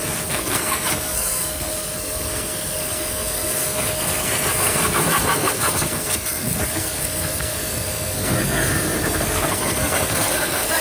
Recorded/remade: remade